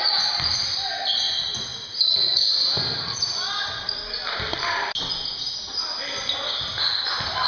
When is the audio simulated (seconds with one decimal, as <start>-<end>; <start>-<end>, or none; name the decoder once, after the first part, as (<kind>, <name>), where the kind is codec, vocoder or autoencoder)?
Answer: none